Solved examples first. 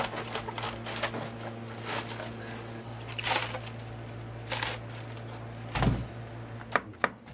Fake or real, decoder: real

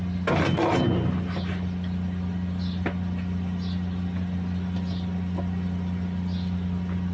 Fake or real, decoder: real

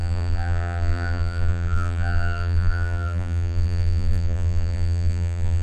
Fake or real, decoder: fake, vocoder, BigVGAN v2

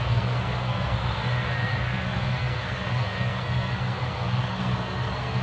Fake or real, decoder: fake, codec, SNAC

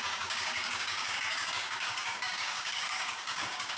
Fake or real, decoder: fake, codec, DAC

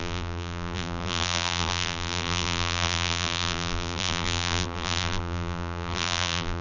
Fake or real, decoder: fake, vocoder, BigVGAN v2